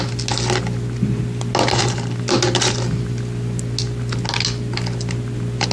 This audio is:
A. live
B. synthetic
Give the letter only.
A